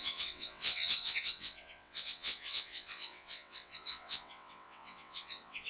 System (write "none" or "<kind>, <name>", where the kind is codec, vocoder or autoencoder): vocoder, WaveNeXt